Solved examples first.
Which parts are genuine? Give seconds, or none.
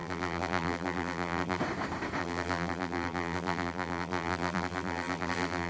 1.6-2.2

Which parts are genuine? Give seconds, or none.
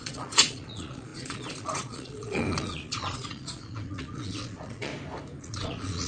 4.9-5.4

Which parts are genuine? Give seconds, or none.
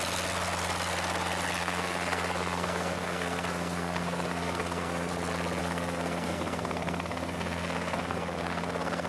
0.0-1.6; 5.1-5.6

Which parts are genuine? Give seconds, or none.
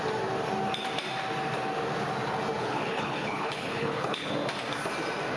0.0-2.6; 4.3-5.4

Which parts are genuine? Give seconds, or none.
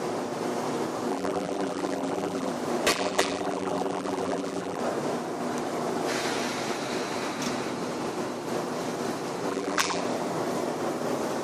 0.0-1.1; 2.5-2.9; 4.8-9.5; 10.0-11.4